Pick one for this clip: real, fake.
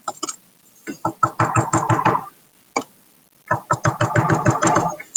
real